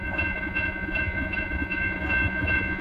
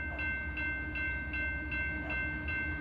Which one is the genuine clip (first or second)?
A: second